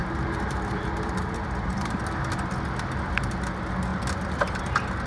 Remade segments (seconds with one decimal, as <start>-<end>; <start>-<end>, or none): 0.0-2.0